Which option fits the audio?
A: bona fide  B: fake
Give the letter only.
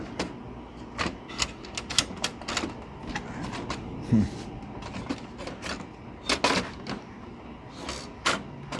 A